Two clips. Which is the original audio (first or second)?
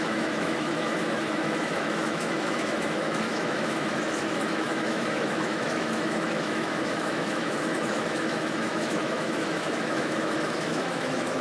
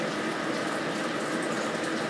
second